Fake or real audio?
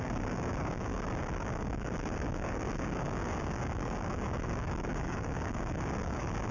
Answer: fake